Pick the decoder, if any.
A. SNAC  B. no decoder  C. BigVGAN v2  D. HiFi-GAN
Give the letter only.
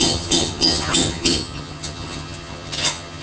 D